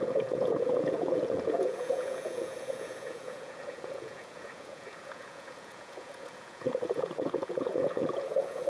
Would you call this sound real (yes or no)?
no